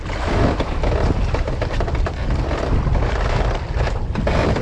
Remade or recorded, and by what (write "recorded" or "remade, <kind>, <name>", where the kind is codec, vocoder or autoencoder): recorded